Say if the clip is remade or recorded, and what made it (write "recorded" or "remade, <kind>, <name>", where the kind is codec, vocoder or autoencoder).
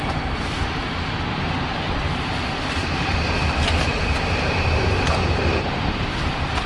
remade, vocoder, BigVGAN v2